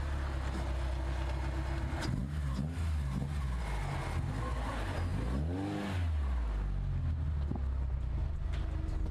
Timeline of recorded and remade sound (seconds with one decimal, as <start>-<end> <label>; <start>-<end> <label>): 0.0-9.1 recorded